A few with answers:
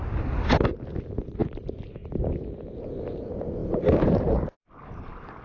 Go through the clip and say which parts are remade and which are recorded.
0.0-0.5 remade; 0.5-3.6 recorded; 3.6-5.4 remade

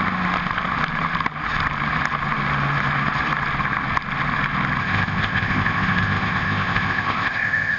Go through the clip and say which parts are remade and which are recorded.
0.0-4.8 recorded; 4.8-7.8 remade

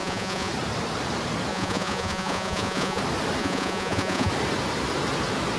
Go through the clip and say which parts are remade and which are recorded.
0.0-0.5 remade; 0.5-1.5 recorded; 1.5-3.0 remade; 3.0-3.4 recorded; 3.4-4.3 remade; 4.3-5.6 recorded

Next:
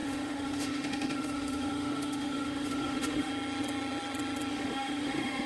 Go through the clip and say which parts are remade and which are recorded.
0.0-3.3 remade; 3.3-4.5 recorded; 4.5-5.5 remade